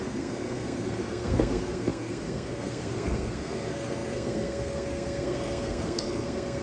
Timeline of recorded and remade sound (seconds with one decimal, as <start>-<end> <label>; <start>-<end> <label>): 0.0-6.6 remade